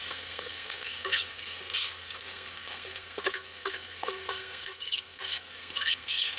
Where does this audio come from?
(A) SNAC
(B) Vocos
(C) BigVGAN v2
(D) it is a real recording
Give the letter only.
A